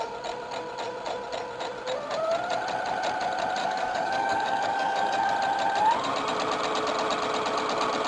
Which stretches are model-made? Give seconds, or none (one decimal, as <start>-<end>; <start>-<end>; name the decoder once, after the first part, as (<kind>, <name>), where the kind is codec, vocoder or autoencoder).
3.6-5.3 (codec, DAC)